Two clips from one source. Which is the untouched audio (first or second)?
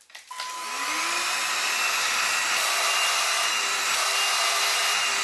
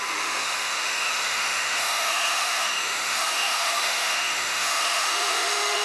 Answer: first